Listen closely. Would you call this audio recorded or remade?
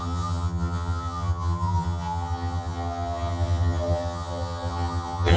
remade